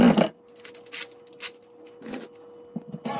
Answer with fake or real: real